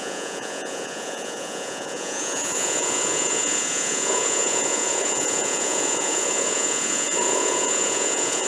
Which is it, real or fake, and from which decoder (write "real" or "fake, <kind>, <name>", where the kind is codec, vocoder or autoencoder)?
fake, vocoder, Vocos